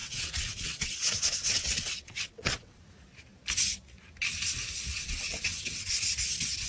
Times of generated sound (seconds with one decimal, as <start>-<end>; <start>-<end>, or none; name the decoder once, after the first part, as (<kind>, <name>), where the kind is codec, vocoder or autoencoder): 0.0-2.8 (vocoder, WaveNeXt); 4.9-5.9